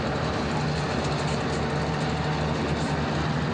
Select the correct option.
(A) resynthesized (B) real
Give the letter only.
B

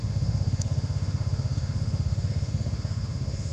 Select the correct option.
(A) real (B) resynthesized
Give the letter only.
B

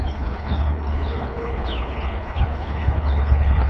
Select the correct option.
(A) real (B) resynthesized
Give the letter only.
B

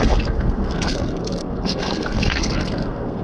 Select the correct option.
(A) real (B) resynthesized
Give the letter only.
B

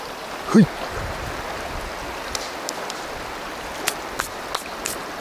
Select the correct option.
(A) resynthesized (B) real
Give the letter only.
B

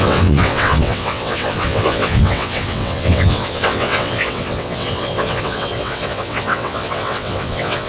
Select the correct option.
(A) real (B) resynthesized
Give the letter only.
B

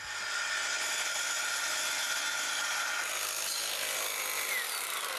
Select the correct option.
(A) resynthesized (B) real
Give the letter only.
B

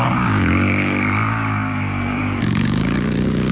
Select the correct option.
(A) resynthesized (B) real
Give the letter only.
A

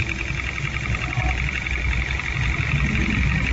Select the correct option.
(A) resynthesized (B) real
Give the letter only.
B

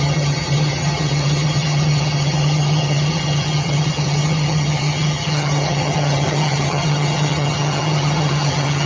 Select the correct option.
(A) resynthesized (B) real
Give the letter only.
A